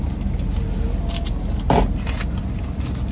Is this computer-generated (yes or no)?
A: no